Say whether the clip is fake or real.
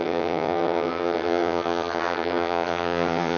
fake